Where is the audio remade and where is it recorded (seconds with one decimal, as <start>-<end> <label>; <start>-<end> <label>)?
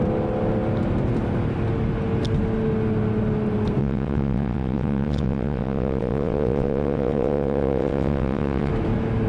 0.0-3.8 recorded; 3.8-8.7 remade; 8.7-9.3 recorded